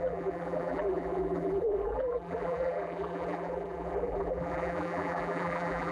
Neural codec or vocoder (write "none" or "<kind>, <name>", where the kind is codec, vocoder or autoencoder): vocoder, BigVGAN v2